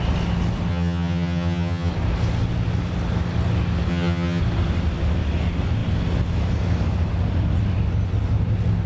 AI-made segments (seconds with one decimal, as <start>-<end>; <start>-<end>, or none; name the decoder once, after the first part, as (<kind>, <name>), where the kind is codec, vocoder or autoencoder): 0.7-1.9 (vocoder, HiFi-GAN); 3.9-4.4